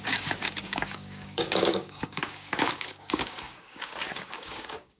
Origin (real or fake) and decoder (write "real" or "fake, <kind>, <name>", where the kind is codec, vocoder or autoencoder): fake, codec, DAC